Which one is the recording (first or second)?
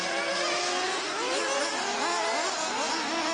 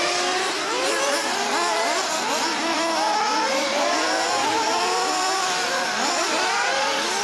first